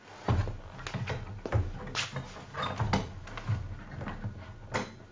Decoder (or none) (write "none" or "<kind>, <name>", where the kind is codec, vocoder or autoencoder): none